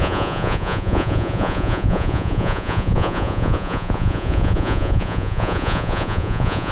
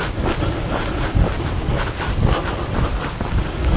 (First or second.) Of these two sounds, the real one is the second